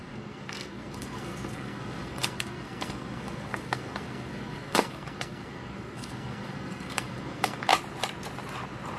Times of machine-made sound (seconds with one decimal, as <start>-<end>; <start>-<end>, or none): 0.0-7.7